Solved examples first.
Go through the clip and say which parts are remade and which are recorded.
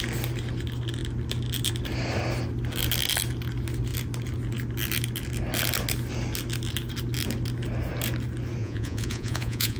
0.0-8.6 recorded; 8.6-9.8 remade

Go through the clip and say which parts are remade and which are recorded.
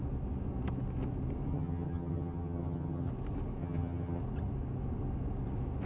0.0-1.5 recorded; 1.5-3.1 remade; 3.1-3.6 recorded; 3.6-4.2 remade; 4.2-5.9 recorded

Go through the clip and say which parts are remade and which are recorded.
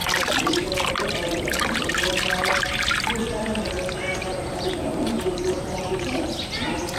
0.0-3.2 recorded; 3.2-6.5 remade; 6.5-7.0 recorded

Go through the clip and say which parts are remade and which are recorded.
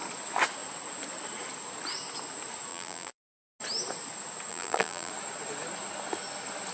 0.0-2.7 recorded; 2.7-3.2 remade; 3.2-4.5 recorded; 4.5-5.1 remade; 5.1-6.7 recorded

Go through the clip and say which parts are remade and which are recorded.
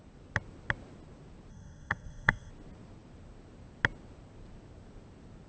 0.0-1.5 recorded; 1.5-2.5 remade; 2.5-5.5 recorded